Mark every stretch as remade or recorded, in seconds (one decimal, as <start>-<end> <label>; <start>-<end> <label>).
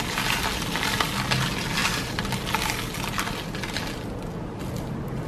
0.0-5.3 recorded